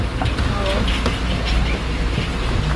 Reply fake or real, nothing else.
real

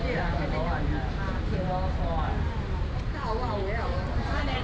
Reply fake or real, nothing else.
real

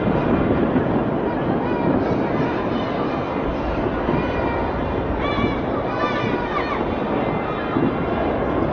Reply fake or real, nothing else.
real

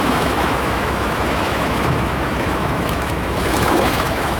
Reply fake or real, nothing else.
fake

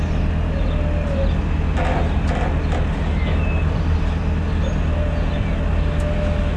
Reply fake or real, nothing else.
real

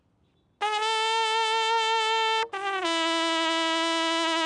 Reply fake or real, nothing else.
real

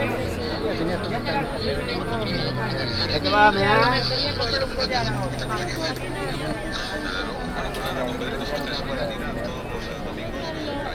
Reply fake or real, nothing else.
real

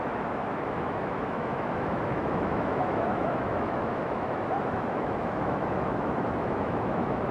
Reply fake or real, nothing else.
fake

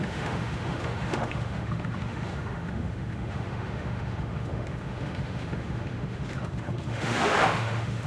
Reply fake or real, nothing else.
fake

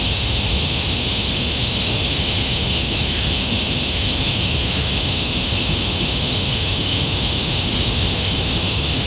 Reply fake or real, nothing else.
fake